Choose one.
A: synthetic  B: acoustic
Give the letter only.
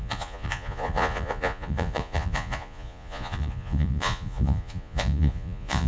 A